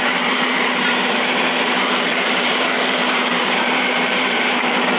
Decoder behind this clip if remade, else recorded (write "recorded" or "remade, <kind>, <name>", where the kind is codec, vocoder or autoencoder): remade, vocoder, BigVGAN v2